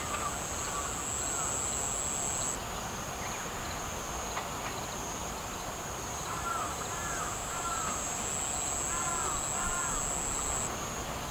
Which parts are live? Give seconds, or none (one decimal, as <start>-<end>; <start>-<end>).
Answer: 0.0-5.2; 8.2-11.3